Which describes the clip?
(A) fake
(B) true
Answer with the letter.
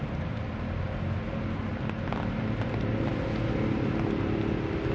B